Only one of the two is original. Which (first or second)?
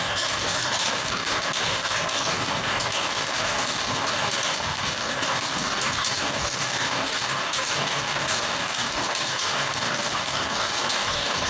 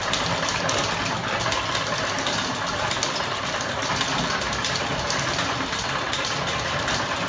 second